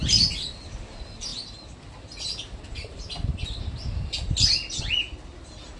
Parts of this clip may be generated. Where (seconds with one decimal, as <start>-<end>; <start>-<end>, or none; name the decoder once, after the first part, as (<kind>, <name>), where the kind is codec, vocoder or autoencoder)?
none